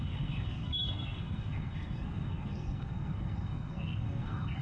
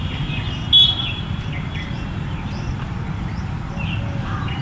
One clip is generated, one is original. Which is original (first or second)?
second